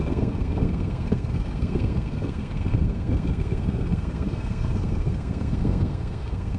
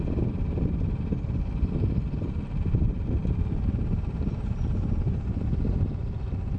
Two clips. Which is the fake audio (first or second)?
first